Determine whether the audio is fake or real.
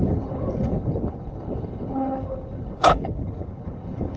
fake